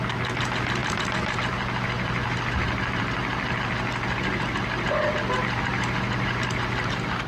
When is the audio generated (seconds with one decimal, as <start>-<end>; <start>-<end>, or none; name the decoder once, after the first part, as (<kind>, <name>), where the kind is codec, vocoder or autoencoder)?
none